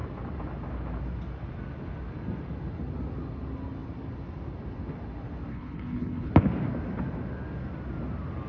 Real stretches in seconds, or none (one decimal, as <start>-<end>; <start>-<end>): 0.0-5.5; 6.3-8.5